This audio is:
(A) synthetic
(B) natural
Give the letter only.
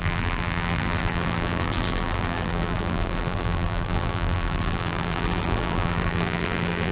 A